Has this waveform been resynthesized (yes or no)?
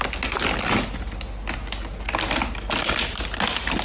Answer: no